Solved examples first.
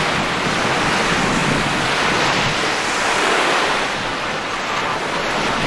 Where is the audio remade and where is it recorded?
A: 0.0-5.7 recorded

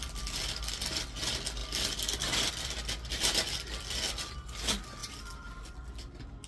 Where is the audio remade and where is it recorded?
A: 0.0-6.5 recorded

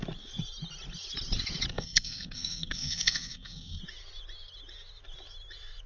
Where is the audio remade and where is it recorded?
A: 0.0-1.7 recorded; 1.7-3.8 remade; 3.8-5.9 recorded